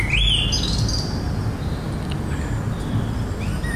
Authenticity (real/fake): real